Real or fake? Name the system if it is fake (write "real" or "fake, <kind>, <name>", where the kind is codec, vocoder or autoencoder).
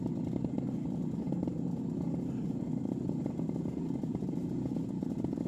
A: real